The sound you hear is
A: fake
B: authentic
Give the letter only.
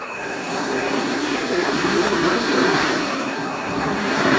A